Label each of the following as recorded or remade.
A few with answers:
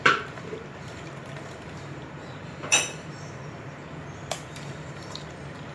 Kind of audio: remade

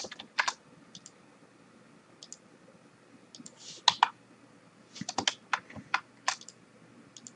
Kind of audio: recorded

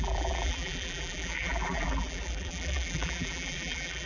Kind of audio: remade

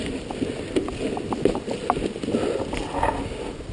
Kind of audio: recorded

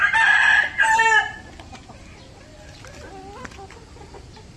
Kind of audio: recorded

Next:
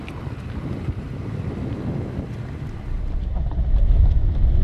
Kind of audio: recorded